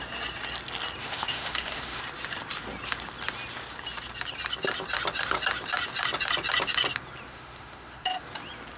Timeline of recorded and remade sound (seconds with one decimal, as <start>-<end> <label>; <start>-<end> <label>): 0.0-1.0 recorded; 1.0-2.0 remade; 2.0-7.3 recorded; 7.3-8.2 remade; 8.2-8.8 recorded